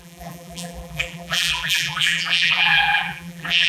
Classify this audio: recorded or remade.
remade